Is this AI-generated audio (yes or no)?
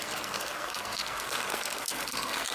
yes